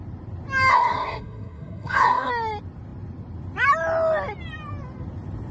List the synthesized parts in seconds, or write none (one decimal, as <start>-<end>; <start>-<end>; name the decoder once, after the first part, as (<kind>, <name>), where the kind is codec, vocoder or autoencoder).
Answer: 0.7-2.3 (codec, SNAC)

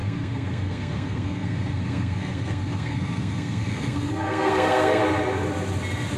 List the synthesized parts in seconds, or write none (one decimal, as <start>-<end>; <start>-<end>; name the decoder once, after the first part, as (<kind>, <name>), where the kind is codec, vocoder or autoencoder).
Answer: 0.0-5.0 (codec, SNAC)

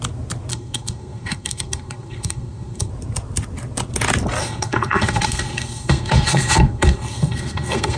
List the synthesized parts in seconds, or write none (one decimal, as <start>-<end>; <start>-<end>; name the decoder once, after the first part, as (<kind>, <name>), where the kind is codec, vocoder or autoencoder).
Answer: 0.5-2.9 (codec, SNAC); 4.4-8.0

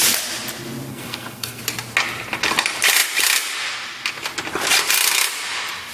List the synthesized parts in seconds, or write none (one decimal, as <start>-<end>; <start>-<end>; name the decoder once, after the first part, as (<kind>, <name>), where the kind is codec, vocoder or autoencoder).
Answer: 0.9-1.6 (codec, SNAC)